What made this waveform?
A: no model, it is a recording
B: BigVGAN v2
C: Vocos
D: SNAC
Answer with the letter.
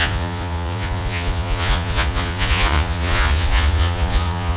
C